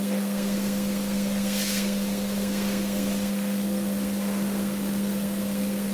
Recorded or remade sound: remade